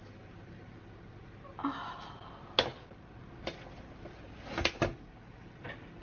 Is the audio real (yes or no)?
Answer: yes